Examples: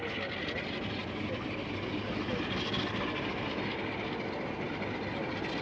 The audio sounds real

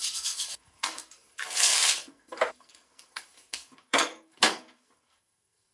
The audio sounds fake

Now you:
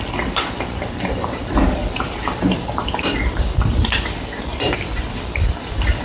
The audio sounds real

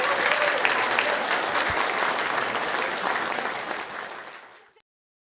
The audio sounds real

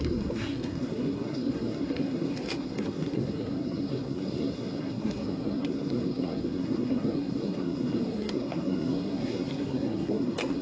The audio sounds fake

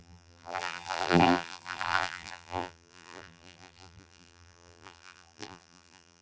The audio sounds fake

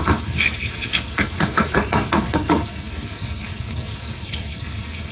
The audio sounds fake